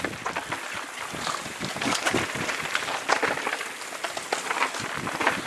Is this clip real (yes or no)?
yes